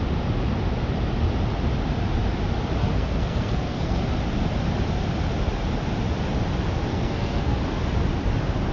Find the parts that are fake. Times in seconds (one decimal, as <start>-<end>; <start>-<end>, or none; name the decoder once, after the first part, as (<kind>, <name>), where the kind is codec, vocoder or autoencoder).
2.8-4.0 (codec, SNAC); 6.9-7.6